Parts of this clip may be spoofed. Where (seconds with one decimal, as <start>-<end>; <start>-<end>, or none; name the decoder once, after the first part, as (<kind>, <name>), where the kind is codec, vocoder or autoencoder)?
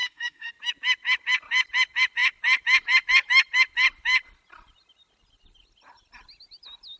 0.0-0.5 (autoencoder, DAC-VAE)